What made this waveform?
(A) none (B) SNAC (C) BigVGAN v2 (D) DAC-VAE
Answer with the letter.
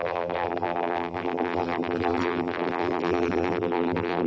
C